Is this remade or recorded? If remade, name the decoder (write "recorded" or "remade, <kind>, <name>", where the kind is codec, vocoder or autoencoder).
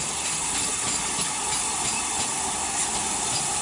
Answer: recorded